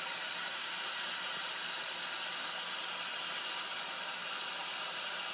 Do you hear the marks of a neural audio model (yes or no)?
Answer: no